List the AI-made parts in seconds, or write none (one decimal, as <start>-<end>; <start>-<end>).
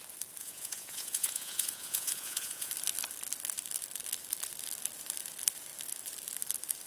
0.4-2.7